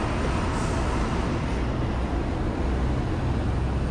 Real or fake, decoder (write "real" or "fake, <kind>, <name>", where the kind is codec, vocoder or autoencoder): real